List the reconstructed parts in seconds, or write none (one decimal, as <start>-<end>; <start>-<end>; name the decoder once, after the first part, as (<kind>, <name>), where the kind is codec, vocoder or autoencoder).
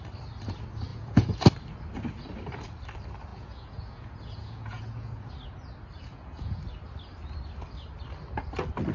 0.9-1.4 (vocoder, Vocos); 3.3-5.3; 6.1-6.6